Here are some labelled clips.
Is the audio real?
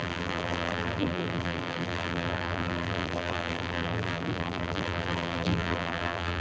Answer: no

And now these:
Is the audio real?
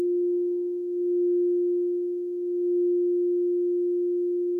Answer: yes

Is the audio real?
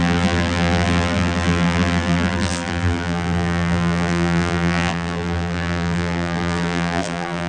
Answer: no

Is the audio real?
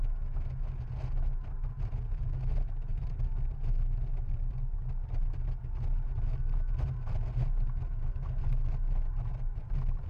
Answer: yes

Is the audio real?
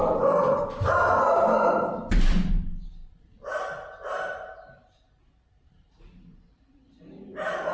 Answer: no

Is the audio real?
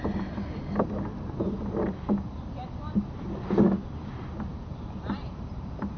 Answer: yes